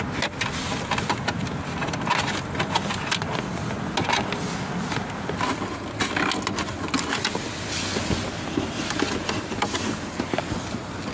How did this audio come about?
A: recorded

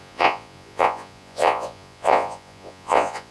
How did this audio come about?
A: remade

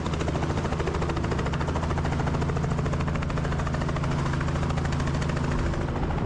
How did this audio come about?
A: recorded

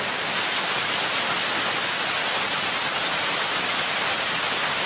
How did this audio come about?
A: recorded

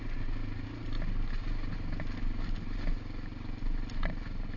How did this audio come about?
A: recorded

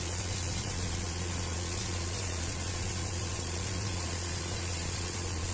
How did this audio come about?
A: remade